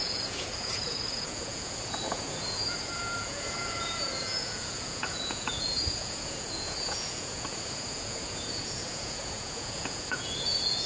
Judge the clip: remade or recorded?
remade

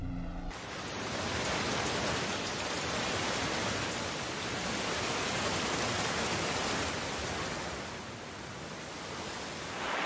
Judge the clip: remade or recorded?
recorded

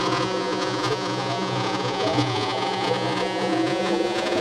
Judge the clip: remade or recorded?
remade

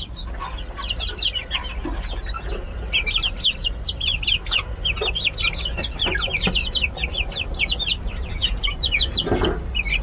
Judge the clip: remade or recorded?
recorded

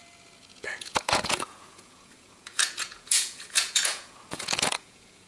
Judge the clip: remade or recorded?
remade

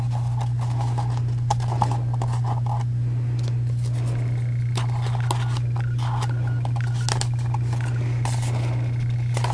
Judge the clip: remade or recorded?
recorded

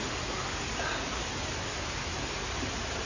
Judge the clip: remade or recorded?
recorded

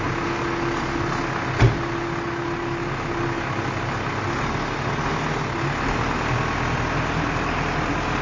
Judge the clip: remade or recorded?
recorded